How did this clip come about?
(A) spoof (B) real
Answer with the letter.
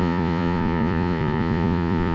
A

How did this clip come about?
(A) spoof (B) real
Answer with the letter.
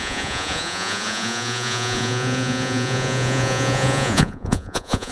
A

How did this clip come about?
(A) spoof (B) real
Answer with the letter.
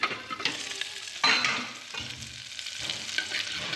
B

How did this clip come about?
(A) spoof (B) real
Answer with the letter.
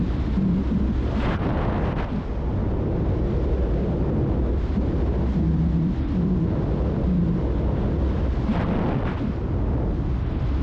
B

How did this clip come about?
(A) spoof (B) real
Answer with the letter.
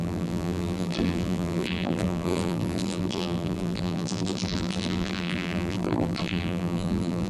A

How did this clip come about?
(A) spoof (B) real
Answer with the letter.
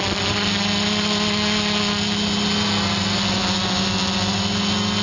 B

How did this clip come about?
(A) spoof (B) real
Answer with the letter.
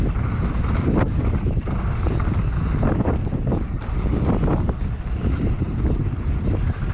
B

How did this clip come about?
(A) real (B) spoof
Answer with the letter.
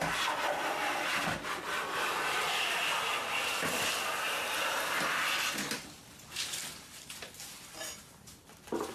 B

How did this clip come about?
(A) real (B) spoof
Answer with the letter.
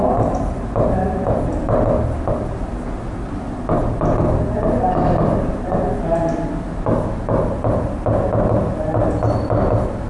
A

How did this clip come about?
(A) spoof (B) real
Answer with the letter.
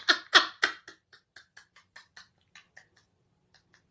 B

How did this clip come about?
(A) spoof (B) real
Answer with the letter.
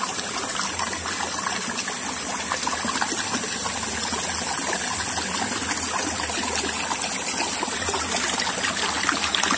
B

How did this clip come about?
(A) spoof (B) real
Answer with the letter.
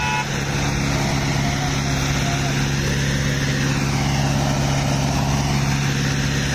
B